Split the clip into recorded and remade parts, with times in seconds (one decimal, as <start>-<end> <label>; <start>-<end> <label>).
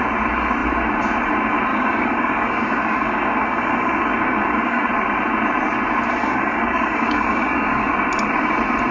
0.0-1.7 recorded; 1.7-4.9 remade; 4.9-6.2 recorded; 6.2-7.9 remade; 7.9-8.9 recorded